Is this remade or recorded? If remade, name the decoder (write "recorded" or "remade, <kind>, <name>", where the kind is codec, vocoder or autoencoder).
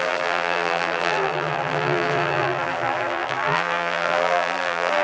remade, vocoder, BigVGAN v2